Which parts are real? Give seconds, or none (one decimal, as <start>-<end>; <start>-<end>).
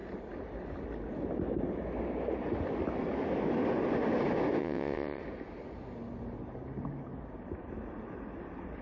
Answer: 0.0-4.6; 5.2-8.8